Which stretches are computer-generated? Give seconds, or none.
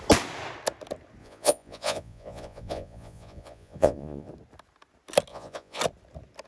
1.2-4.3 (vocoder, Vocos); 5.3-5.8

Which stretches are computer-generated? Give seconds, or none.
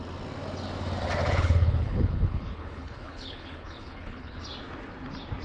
1.2-4.4 (codec, HILCodec)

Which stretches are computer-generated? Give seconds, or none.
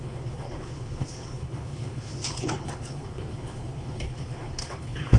0.0-5.2 (codec, HILCodec)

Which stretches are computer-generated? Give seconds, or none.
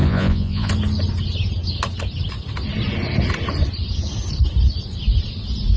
0.0-0.7 (vocoder, Vocos)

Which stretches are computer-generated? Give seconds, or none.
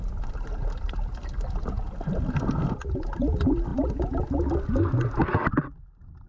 none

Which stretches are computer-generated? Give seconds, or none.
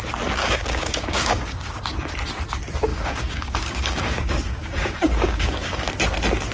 0.4-2.1 (codec, DAC); 2.9-5.9